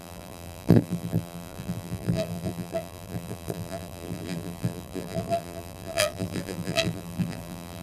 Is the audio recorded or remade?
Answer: remade